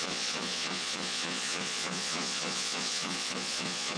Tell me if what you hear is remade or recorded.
remade